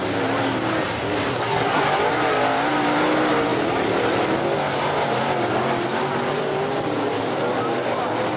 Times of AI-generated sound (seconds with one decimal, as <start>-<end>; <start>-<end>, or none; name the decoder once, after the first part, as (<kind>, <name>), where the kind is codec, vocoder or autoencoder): 1.3-1.8 (codec, SNAC)

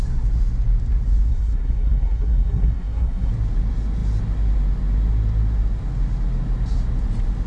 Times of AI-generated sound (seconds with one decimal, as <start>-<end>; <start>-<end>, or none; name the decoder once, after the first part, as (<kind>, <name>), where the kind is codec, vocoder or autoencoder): 1.3-3.3 (codec, SNAC)

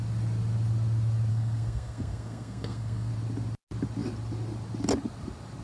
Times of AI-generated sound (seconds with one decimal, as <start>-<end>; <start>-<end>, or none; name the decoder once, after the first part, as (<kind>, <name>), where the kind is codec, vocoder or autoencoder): 1.3-3.1 (codec, SNAC)

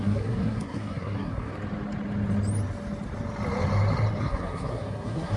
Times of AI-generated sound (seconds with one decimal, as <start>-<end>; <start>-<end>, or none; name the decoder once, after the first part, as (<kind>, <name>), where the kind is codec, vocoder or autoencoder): 0.0-1.5 (codec, SNAC); 4.2-5.4